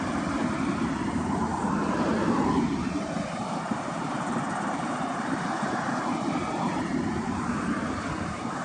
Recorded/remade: remade